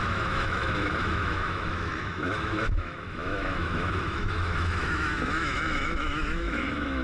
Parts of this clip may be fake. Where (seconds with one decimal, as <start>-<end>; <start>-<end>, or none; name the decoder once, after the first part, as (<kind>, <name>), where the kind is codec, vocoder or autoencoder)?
0.0-7.0 (autoencoder, DAC-VAE)